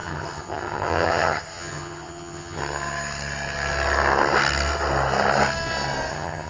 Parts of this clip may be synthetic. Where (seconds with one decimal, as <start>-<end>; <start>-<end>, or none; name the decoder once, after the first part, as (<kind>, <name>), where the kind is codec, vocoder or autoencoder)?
0.0-2.6 (vocoder, HiFi-GAN); 6.1-6.5